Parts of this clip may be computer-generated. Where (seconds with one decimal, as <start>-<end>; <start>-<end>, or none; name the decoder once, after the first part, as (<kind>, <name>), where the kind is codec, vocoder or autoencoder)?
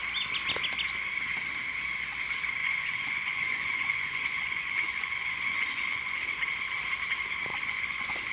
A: 2.6-6.2 (vocoder, Vocos); 7.5-8.3